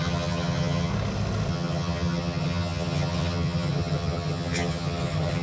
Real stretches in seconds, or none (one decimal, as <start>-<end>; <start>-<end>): 0.9-1.5